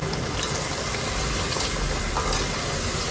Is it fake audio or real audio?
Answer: real